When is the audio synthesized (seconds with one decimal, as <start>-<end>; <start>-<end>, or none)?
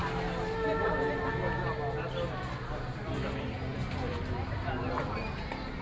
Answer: none